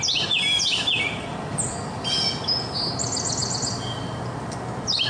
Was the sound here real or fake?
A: real